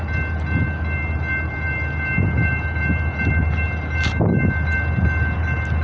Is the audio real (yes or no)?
yes